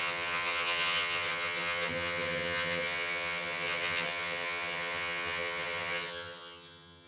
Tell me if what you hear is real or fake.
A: fake